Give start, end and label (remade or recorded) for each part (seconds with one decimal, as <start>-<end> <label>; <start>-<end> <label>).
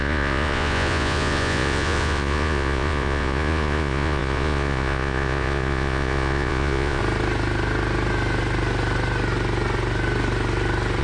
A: 0.0-7.0 remade; 7.0-11.0 recorded